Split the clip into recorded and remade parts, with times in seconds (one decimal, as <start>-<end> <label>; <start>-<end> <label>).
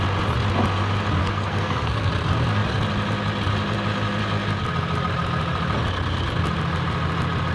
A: 0.0-1.2 recorded; 1.2-2.1 remade; 2.1-7.5 recorded